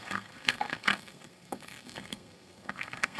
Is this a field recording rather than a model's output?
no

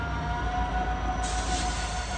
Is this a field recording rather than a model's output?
yes